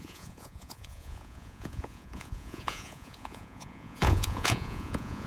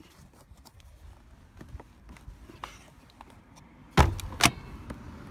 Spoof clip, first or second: first